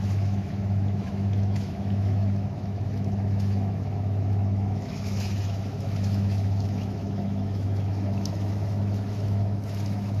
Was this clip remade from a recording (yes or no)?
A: yes